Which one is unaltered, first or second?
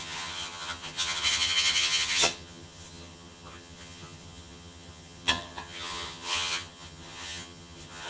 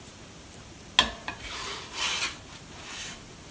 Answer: second